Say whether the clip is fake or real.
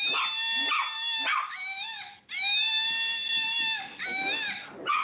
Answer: real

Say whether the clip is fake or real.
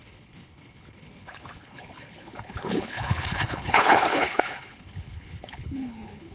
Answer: fake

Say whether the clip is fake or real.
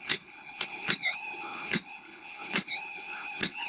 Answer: fake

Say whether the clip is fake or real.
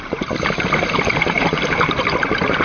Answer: real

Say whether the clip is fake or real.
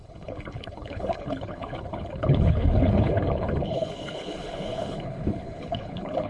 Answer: fake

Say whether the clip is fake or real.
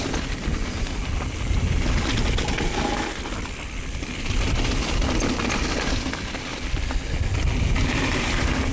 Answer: real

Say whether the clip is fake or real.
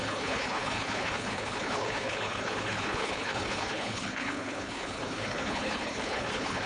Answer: fake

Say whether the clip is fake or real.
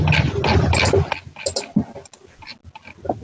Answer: real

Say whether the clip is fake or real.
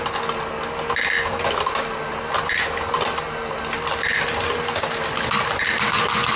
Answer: real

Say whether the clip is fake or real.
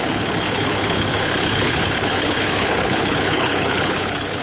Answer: fake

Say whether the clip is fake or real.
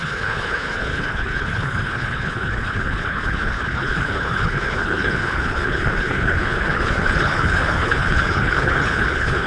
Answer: fake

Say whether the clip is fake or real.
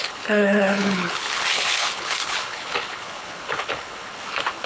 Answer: fake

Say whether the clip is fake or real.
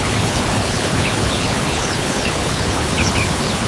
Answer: fake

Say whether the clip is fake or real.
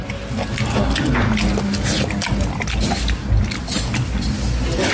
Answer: real